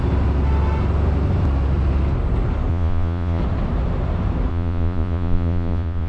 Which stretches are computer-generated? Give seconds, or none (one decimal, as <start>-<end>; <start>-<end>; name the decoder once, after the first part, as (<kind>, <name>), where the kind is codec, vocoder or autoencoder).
2.7-3.4 (vocoder, Vocos); 4.5-6.1